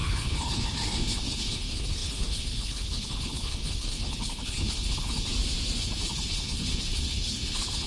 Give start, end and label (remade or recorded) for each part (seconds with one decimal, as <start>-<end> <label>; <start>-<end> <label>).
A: 0.0-5.3 remade; 5.3-5.8 recorded; 5.8-7.9 remade